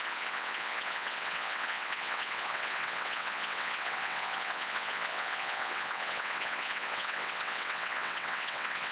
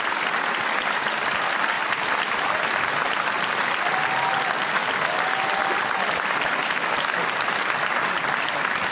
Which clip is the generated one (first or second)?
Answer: first